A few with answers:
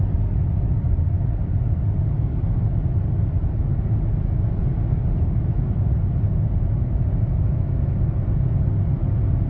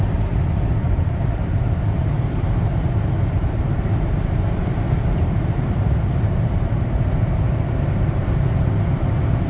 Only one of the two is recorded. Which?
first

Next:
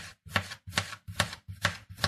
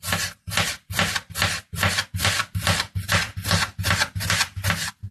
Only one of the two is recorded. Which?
second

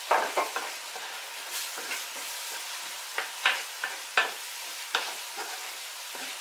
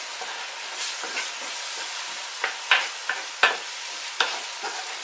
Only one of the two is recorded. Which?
second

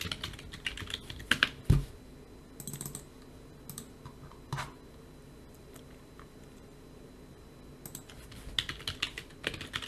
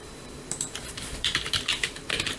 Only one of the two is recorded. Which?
first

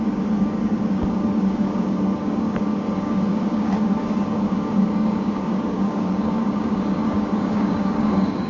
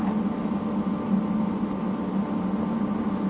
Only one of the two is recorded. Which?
second